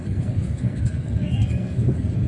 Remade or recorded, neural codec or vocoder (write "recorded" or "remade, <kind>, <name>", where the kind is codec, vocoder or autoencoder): remade, codec, SNAC